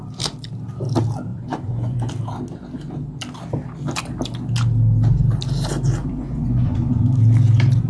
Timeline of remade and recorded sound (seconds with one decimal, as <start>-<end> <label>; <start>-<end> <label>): 0.0-1.3 recorded; 1.3-2.1 remade; 2.1-6.0 recorded; 6.0-7.0 remade; 7.0-7.9 recorded